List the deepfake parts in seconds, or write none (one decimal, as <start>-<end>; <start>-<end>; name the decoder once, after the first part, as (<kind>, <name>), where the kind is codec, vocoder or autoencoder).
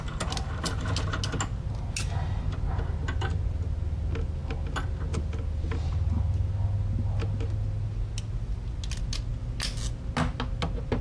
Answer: none